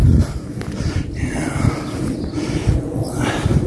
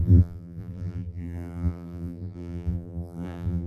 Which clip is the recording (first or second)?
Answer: first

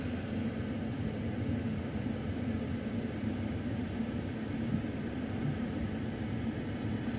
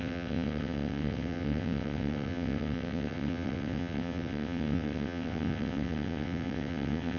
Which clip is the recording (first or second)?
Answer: first